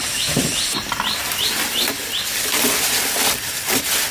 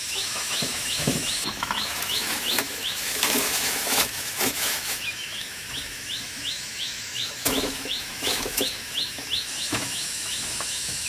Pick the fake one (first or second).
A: second